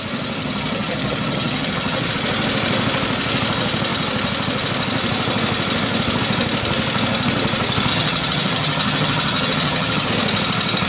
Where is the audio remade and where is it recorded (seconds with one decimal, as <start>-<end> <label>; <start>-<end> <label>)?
0.0-0.4 recorded; 0.4-2.1 remade; 2.1-7.9 recorded; 7.9-10.1 remade; 10.1-10.9 recorded